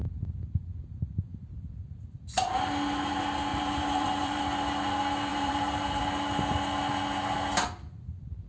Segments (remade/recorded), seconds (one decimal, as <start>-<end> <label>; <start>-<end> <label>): 0.0-3.5 recorded; 3.5-4.4 remade; 4.4-5.3 recorded; 5.3-6.0 remade; 6.0-8.5 recorded